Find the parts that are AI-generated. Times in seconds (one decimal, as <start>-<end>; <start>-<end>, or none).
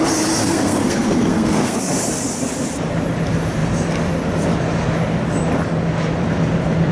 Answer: 0.4-1.8